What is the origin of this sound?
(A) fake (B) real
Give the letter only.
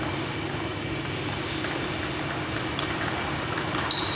B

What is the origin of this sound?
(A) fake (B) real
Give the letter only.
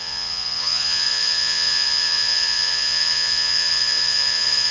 A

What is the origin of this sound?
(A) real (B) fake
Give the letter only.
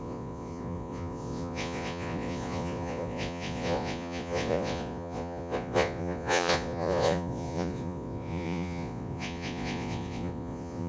B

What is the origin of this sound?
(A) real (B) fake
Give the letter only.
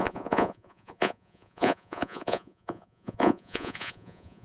B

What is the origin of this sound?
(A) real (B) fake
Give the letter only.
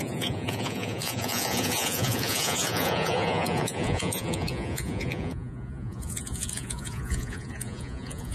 B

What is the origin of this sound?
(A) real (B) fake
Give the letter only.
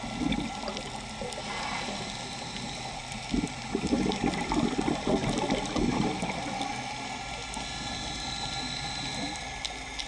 A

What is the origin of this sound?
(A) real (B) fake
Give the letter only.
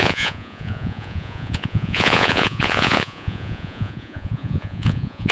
B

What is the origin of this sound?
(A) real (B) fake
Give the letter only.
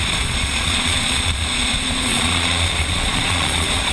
B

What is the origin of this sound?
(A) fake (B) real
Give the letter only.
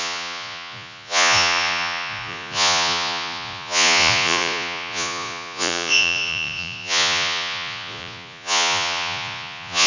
A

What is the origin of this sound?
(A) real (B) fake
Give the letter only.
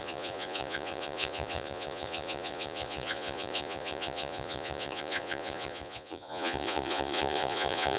B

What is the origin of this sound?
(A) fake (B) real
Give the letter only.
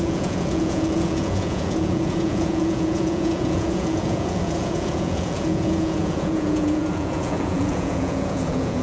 A